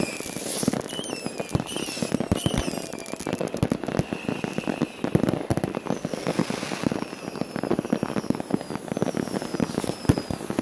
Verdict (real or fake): real